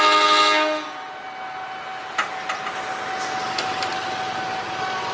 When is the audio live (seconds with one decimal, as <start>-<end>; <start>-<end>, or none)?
0.0-5.1